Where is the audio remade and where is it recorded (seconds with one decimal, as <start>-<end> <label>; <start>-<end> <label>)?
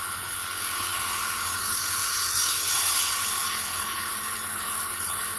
0.0-5.4 remade